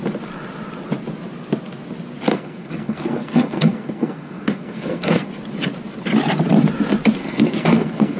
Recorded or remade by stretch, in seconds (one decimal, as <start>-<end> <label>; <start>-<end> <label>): 0.0-2.3 recorded; 2.3-5.3 remade; 5.3-7.2 recorded; 7.2-8.2 remade